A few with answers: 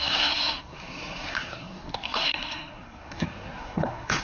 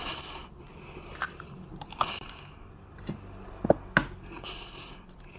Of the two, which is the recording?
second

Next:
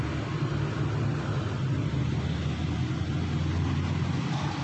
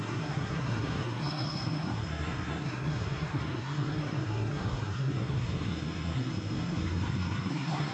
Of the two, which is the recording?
first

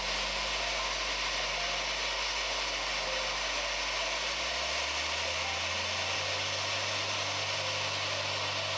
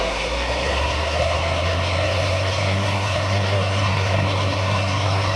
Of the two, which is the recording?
first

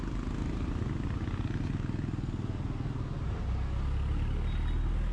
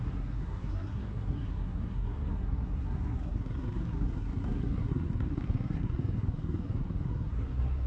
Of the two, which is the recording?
first